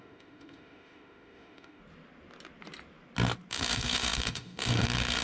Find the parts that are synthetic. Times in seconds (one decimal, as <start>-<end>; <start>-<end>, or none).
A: 0.0-1.8; 3.5-5.2